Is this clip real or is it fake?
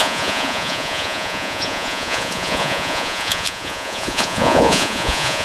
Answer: fake